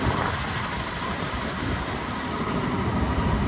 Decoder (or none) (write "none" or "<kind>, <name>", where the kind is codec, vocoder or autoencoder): none